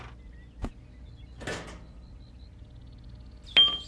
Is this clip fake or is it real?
real